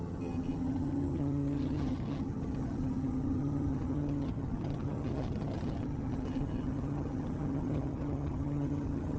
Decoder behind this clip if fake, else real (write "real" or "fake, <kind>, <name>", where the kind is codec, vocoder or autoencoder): fake, vocoder, HiFi-GAN